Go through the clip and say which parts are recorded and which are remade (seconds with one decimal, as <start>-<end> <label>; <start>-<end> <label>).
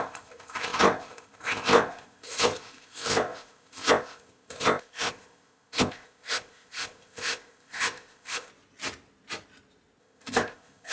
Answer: 0.0-8.5 remade; 8.5-10.0 recorded; 10.0-10.9 remade